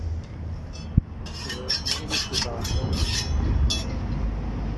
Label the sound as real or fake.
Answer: real